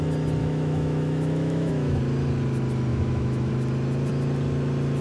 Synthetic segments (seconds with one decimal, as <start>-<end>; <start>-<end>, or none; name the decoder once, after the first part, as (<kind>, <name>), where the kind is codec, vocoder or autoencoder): 0.4-2.0 (autoencoder, DAC-VAE); 2.9-3.5